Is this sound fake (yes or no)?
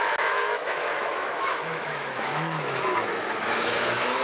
yes